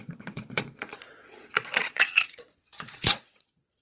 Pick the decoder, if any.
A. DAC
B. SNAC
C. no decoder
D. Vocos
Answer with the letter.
D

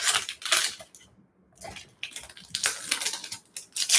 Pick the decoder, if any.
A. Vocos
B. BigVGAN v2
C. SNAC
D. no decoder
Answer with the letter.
D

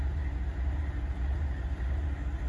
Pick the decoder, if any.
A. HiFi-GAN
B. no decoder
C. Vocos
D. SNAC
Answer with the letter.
B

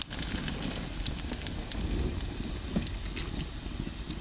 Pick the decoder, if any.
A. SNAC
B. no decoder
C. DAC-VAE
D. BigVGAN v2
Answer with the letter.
B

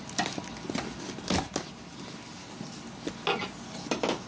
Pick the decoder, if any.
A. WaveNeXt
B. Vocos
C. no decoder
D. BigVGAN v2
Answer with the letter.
C